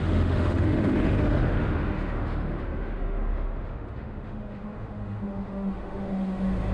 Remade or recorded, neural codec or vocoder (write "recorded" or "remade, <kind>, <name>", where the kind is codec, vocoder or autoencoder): remade, autoencoder, DAC-VAE